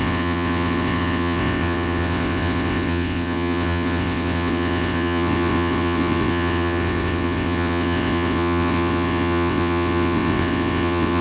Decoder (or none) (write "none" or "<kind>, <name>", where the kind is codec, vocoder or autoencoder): vocoder, WaveNeXt